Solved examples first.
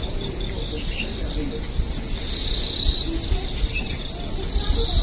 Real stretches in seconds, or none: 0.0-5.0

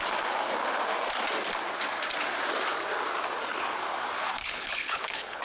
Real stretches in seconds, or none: 0.0-4.4